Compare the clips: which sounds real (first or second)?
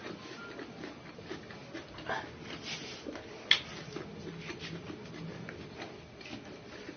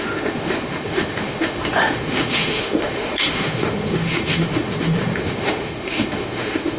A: first